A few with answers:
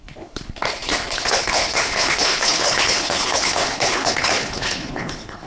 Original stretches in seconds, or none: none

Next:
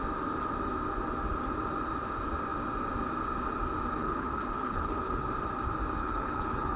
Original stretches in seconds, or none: 0.0-4.0; 5.3-6.0

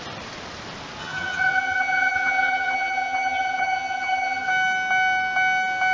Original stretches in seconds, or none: 0.0-1.0; 4.5-5.9

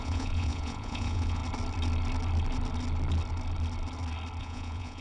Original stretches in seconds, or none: 1.4-4.4

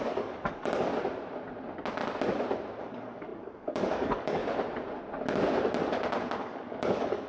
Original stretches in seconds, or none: 0.9-2.8; 4.4-6.4